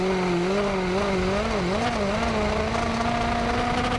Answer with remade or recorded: recorded